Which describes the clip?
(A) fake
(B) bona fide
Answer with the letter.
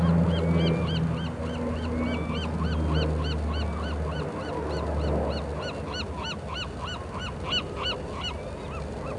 B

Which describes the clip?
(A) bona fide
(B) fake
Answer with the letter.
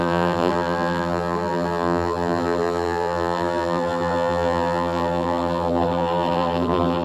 B